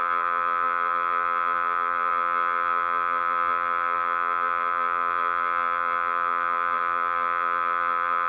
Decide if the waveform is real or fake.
fake